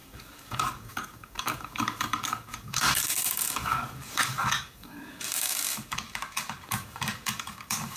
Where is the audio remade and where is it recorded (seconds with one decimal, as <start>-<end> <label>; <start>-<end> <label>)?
0.0-8.0 remade